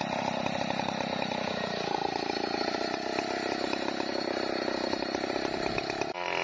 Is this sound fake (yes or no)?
no